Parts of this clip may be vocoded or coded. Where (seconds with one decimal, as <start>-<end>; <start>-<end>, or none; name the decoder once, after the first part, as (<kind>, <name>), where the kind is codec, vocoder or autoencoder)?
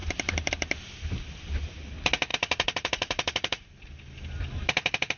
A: 0.0-0.5 (vocoder, BigVGAN v2); 2.3-3.7